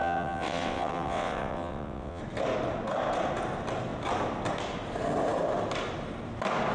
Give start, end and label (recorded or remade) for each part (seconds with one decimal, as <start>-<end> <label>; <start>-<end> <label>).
0.0-2.2 remade; 2.2-6.7 recorded